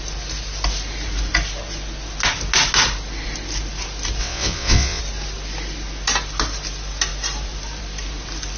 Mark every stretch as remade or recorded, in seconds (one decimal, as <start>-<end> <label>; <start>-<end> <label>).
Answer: 0.0-4.2 recorded; 4.2-5.0 remade; 5.0-8.6 recorded